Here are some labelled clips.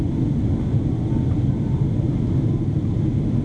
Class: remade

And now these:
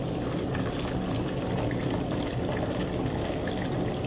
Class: recorded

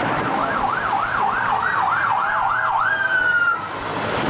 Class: remade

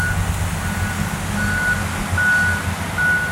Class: recorded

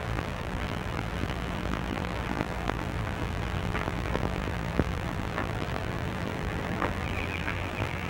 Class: remade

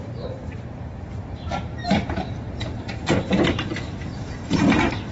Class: remade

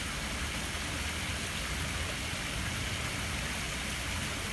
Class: recorded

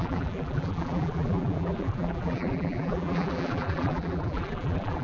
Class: remade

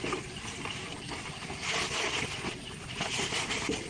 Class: recorded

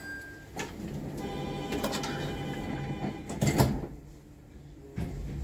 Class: recorded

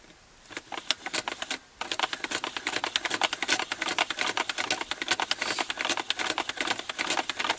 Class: recorded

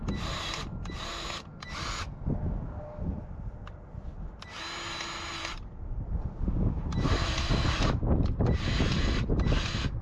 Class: recorded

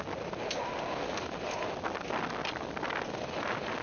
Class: recorded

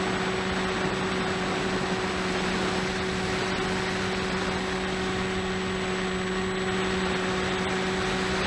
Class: recorded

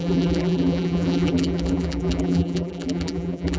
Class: remade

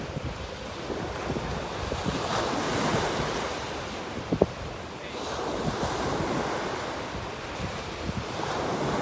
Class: recorded